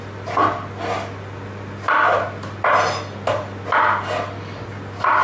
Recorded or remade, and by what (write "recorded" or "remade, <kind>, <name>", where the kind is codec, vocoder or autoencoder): recorded